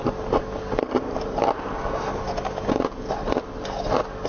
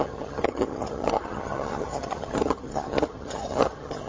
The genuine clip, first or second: first